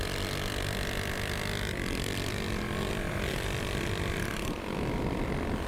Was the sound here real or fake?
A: fake